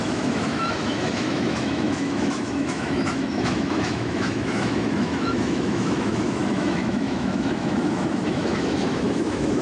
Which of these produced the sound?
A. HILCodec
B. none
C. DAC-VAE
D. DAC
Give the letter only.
C